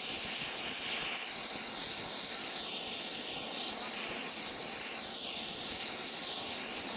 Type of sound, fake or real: real